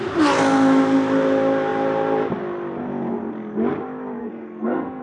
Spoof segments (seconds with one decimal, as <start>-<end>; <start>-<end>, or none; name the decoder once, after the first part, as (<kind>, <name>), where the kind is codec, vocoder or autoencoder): 4.2-5.0 (codec, SNAC)